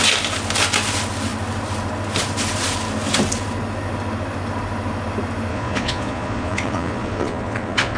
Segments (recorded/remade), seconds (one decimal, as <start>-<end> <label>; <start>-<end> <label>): 0.0-5.5 recorded; 5.5-8.0 remade